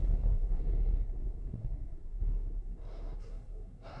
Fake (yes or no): yes